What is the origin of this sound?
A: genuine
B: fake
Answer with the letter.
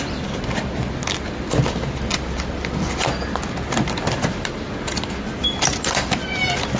A